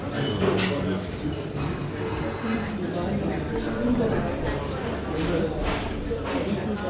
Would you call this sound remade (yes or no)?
no